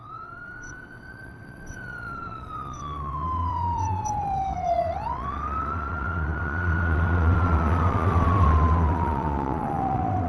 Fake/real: fake